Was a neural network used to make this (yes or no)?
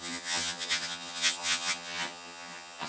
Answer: yes